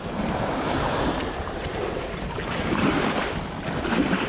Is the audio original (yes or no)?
no